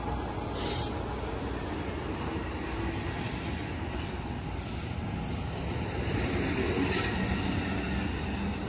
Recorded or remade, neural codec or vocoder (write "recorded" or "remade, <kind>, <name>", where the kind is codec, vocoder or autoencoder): recorded